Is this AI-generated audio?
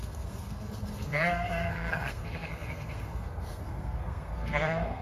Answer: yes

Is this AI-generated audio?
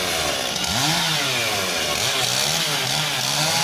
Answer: no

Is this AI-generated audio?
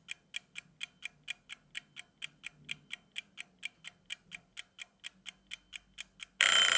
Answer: no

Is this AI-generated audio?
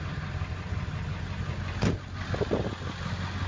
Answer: no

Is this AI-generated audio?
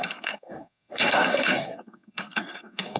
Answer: yes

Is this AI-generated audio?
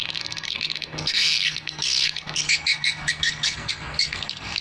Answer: yes